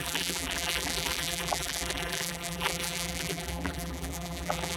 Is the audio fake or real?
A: fake